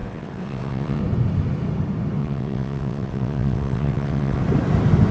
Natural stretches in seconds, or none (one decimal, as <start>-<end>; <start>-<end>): 1.0-2.2; 4.4-5.1